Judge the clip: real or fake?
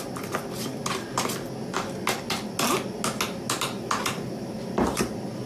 real